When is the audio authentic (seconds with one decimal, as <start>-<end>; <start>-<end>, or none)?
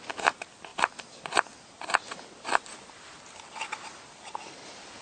0.0-5.0